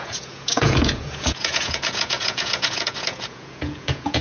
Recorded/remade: remade